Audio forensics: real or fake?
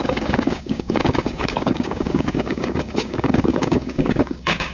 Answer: fake